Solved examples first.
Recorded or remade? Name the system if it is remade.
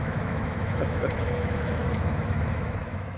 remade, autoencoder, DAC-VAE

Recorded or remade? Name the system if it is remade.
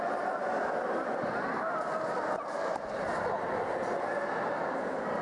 recorded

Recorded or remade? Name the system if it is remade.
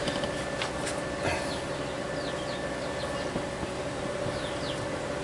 recorded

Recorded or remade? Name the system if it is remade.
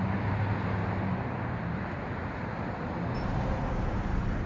recorded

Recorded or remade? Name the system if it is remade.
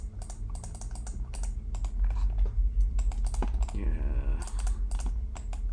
recorded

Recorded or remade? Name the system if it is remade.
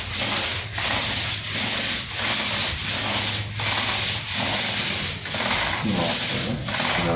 recorded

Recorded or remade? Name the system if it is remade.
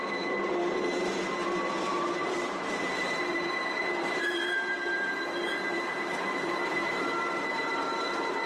remade, vocoder, BigVGAN v2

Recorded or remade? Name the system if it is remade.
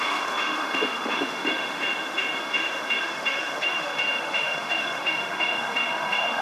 remade, autoencoder, DAC-VAE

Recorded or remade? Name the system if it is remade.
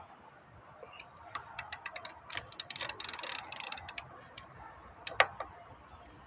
recorded